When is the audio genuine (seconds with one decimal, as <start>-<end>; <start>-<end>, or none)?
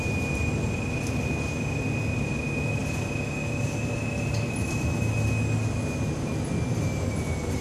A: 0.0-7.6